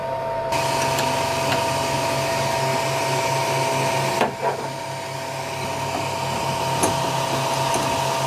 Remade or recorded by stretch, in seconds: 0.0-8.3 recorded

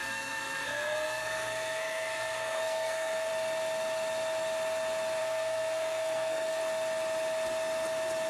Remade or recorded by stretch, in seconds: 0.0-3.3 remade; 3.3-5.2 recorded; 5.2-6.6 remade; 6.6-8.3 recorded